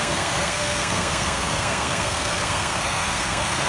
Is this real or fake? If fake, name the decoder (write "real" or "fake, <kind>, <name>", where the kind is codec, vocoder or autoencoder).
fake, codec, SNAC